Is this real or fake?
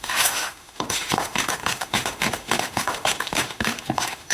fake